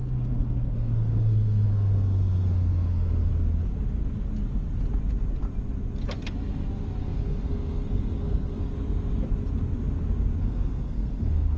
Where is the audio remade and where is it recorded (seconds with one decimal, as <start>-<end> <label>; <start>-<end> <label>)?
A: 0.0-3.3 remade; 3.3-7.0 recorded; 7.0-8.7 remade; 8.7-10.4 recorded; 10.4-11.6 remade